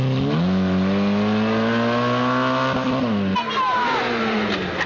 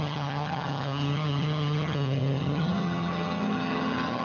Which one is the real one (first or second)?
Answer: first